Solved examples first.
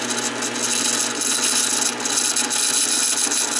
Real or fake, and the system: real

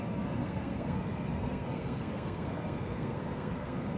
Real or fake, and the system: fake, codec, SNAC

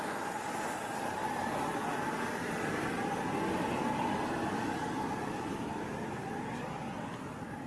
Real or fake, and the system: real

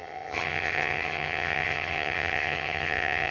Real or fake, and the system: fake, vocoder, HiFi-GAN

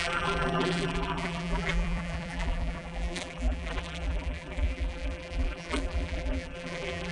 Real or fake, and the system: fake, vocoder, BigVGAN v2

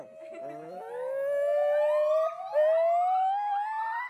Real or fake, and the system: real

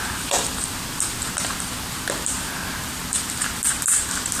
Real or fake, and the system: real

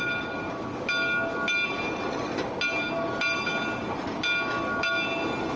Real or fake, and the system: real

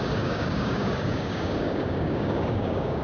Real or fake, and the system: fake, codec, DAC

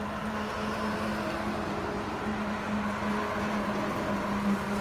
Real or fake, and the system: real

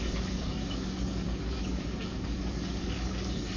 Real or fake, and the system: fake, codec, DAC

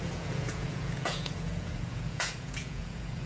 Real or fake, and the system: fake, vocoder, Vocos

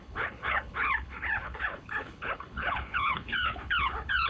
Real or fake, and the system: fake, codec, HILCodec